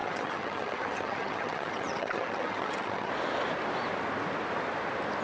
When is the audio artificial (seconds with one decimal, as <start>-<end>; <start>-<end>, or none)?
0.0-3.1